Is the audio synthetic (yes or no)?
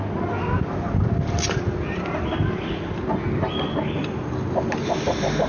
no